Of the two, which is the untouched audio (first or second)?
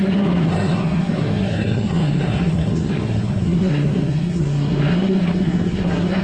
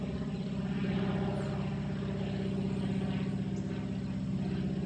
second